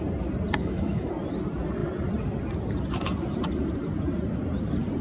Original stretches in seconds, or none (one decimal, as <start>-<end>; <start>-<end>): 0.0-0.6; 1.1-5.0